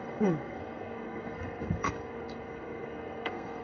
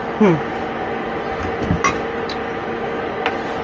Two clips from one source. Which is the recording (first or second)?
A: second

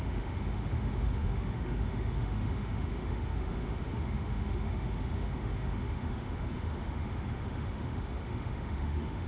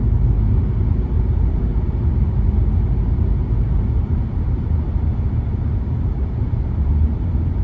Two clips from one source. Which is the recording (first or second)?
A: second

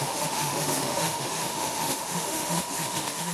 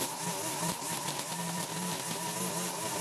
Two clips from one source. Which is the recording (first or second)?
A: second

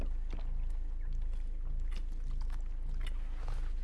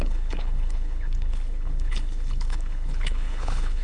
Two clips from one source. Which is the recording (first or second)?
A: first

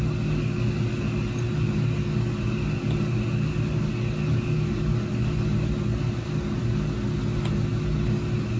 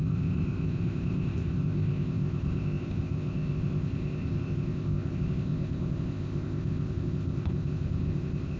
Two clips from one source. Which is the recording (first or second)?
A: first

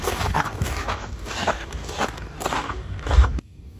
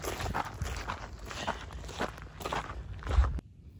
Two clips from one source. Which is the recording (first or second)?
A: second